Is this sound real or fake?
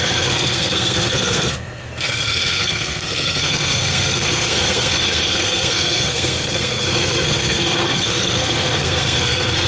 fake